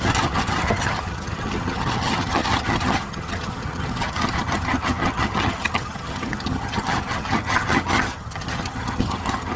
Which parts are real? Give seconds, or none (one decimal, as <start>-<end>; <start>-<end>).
none